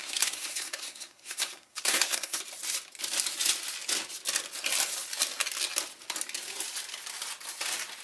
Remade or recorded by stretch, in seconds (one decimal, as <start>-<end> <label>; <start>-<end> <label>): 0.0-2.4 remade; 2.4-8.0 recorded